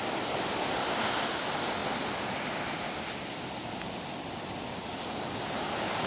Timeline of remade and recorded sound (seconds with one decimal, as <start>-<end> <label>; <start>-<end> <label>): 0.0-6.1 recorded